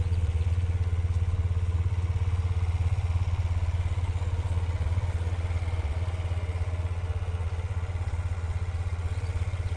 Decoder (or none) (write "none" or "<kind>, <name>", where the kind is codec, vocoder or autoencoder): vocoder, Vocos